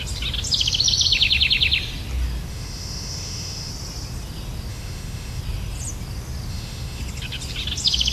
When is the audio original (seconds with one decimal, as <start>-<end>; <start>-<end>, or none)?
0.0-2.5; 3.7-4.7; 5.4-6.5; 7.0-8.1